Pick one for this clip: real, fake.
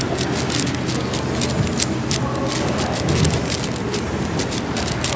real